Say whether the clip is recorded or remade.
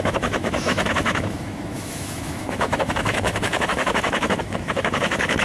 remade